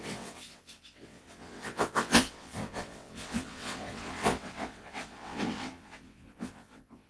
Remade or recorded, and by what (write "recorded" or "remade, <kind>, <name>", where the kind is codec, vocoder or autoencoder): remade, vocoder, WaveNeXt